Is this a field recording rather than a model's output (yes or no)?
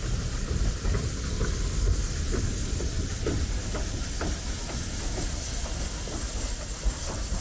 yes